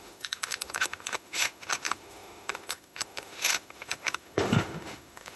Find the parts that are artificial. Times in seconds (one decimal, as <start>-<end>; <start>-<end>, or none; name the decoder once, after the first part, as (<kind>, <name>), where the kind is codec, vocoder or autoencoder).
0.0-5.4 (autoencoder, DAC-VAE)